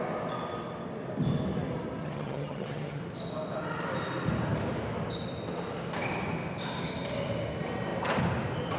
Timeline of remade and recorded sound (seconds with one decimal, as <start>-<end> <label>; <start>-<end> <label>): 0.0-2.0 recorded; 2.0-3.0 remade; 3.0-8.8 recorded